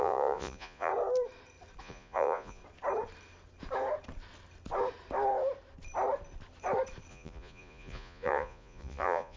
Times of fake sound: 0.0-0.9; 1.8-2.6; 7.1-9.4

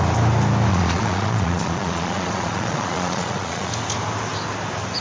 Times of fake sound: 0.7-3.7